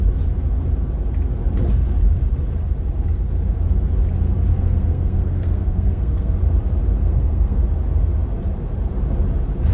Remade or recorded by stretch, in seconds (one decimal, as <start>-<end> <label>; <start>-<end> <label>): 0.0-4.5 recorded; 4.5-6.4 remade; 6.4-7.0 recorded; 7.0-7.6 remade; 7.6-9.7 recorded